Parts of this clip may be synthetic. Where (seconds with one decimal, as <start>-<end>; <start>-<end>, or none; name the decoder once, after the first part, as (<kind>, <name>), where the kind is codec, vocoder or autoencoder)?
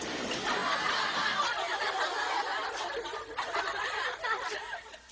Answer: none